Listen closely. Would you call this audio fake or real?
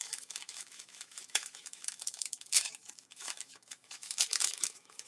fake